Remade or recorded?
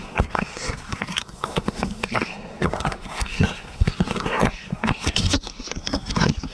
remade